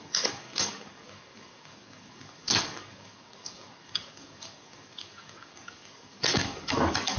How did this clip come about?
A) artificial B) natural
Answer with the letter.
A